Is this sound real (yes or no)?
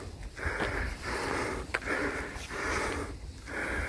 yes